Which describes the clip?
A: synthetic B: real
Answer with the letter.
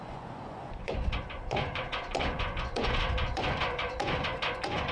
A